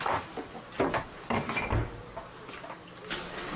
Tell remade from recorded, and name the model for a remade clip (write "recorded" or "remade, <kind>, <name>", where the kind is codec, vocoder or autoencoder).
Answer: recorded